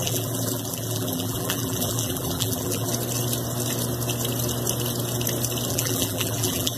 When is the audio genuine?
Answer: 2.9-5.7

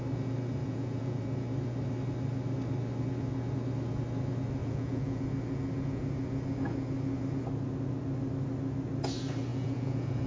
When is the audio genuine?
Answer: 0.0-0.6; 1.2-4.6; 5.2-9.5

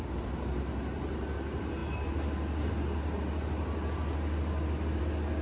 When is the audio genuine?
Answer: 0.0-5.4

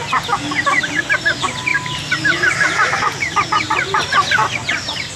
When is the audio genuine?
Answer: 0.8-1.7; 3.3-4.4

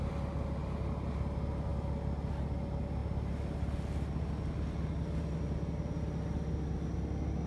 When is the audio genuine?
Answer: 0.0-7.5

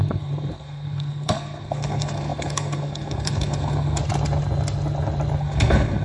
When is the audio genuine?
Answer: 4.0-5.4

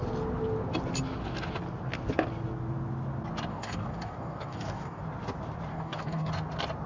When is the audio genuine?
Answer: 0.0-3.5; 5.0-5.7; 6.3-6.9

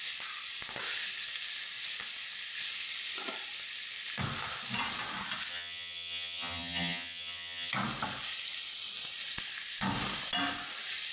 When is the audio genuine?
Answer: 0.0-5.5; 7.7-11.1